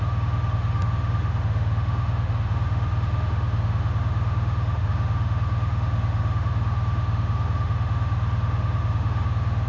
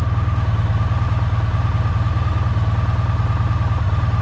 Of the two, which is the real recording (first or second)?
second